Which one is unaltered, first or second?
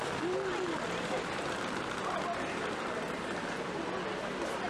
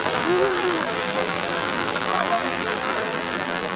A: first